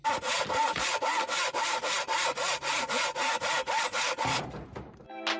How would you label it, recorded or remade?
recorded